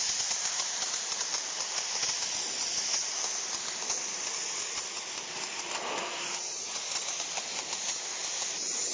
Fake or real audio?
real